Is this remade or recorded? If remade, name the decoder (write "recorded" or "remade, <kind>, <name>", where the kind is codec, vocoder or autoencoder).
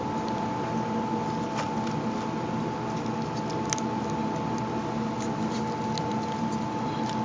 recorded